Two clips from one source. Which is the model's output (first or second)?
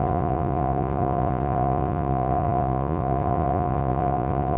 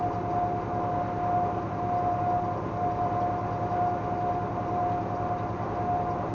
first